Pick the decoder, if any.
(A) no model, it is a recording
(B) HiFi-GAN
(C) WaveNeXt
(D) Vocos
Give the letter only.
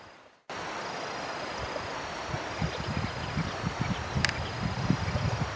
A